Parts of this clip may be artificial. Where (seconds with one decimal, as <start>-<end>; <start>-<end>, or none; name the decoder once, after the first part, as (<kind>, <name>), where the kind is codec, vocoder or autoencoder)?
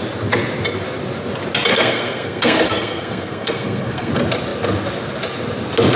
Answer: 1.7-4.1 (codec, SNAC)